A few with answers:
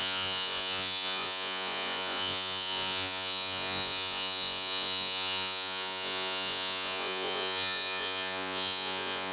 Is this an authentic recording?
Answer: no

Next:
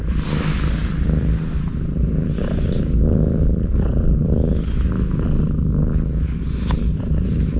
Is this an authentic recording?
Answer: yes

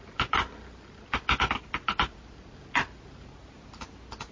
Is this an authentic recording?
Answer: yes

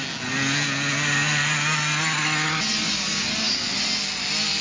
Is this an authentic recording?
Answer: yes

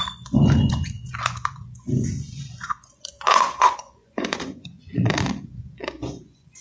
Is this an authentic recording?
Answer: no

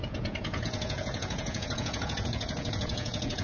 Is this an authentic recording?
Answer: no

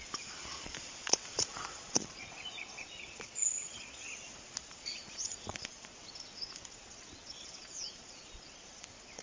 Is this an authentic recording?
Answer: no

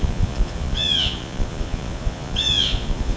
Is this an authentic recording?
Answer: no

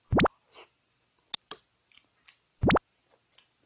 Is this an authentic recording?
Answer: yes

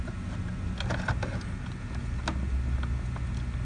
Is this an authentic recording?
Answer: yes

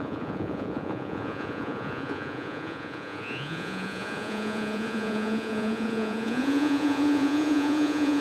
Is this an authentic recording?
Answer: no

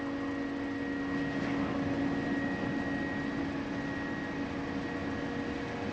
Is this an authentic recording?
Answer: yes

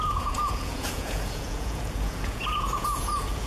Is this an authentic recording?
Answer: no